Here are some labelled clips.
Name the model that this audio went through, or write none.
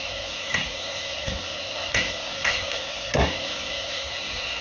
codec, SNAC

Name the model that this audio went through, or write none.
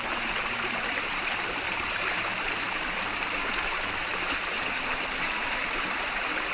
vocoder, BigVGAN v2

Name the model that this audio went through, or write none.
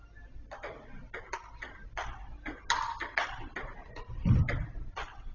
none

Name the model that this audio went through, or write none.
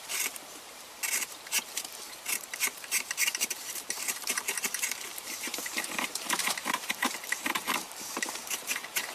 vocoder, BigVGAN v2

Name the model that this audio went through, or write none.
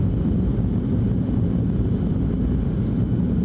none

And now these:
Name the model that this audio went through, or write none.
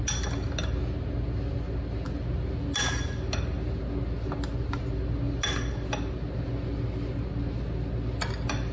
none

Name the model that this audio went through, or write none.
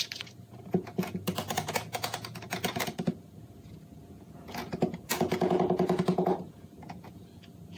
vocoder, Vocos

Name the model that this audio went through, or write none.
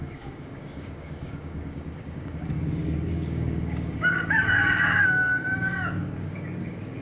codec, DAC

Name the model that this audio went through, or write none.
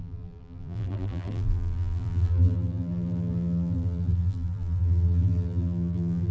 vocoder, BigVGAN v2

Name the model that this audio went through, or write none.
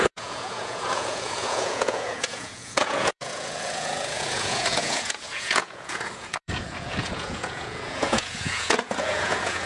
vocoder, Vocos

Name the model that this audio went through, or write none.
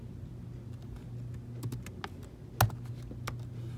none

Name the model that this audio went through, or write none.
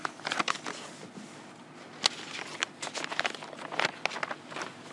none